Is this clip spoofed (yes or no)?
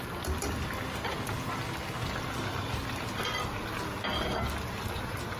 no